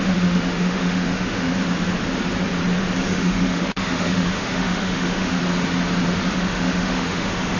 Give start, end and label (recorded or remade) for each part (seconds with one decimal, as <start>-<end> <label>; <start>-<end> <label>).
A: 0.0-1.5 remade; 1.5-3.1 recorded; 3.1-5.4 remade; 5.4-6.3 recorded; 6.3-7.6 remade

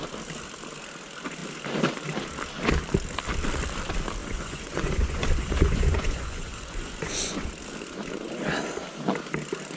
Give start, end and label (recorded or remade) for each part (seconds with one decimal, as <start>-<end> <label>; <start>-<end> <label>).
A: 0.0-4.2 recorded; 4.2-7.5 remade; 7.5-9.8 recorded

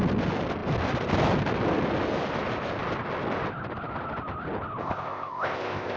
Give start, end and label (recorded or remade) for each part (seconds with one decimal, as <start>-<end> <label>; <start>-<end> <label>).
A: 0.0-4.8 recorded; 4.8-6.0 remade

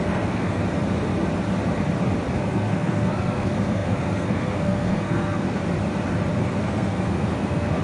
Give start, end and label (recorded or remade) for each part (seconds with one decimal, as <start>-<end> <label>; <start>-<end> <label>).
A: 0.0-0.6 remade; 0.6-2.3 recorded; 2.3-5.6 remade; 5.6-6.6 recorded; 6.6-7.8 remade

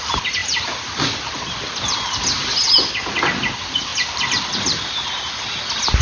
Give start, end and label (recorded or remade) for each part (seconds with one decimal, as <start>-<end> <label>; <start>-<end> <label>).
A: 0.0-6.0 recorded

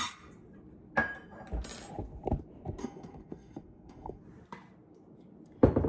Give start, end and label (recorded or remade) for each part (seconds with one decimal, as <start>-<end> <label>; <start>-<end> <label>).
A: 0.0-2.8 recorded; 2.8-4.2 remade; 4.2-5.9 recorded

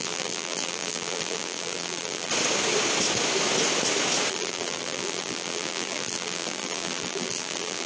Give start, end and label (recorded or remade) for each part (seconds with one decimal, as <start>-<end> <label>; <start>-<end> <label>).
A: 0.0-2.3 remade; 2.3-4.3 recorded; 4.3-7.9 remade

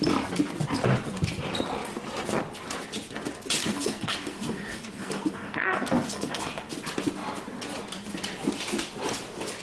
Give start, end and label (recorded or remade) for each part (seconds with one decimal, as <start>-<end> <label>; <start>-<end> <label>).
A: 0.0-3.6 recorded; 3.6-6.7 remade; 6.7-9.6 recorded